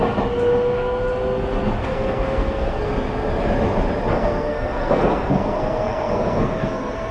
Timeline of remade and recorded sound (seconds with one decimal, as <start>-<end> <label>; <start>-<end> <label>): 0.0-1.8 recorded; 1.8-2.9 remade; 2.9-4.1 recorded; 4.1-7.1 remade